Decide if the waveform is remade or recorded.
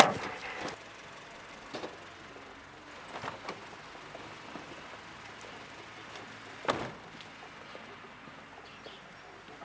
recorded